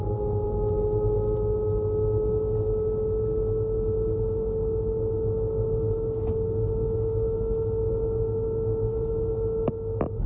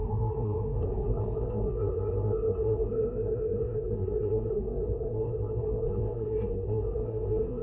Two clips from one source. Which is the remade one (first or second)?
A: second